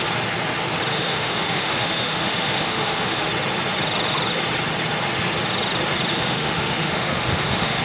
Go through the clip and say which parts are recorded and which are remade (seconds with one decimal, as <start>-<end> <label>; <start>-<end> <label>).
0.0-0.9 recorded; 0.9-3.3 remade; 3.3-6.1 recorded; 6.1-7.8 remade